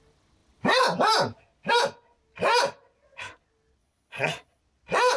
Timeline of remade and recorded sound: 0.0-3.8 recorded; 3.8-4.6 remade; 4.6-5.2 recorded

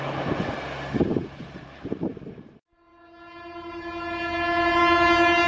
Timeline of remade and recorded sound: 0.0-5.5 recorded

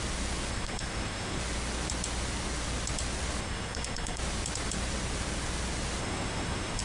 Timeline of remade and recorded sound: 0.0-0.5 recorded; 0.5-1.4 remade; 1.4-3.4 recorded; 3.4-4.2 remade; 4.2-6.0 recorded; 6.0-6.8 remade

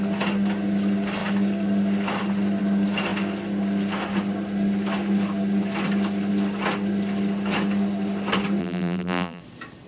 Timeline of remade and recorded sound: 0.0-8.6 recorded; 8.6-9.4 remade; 9.4-9.9 recorded

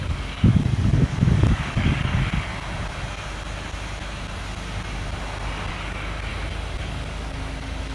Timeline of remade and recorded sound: 0.0-2.5 remade; 2.5-5.7 recorded; 5.7-6.3 remade; 6.3-6.8 recorded; 6.8-7.9 remade

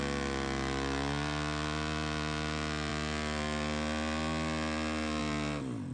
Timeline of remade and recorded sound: 0.0-5.9 recorded

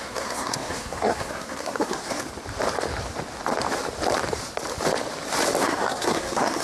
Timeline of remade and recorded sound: 0.0-2.2 remade; 2.2-5.6 recorded; 5.6-6.6 remade

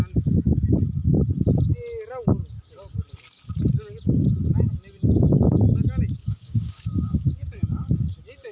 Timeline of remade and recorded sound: 0.0-6.2 recorded; 6.2-7.9 remade; 7.9-8.5 recorded